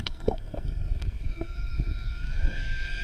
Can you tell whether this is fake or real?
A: fake